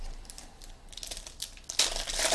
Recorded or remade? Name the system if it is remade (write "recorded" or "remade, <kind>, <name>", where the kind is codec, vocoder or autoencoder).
recorded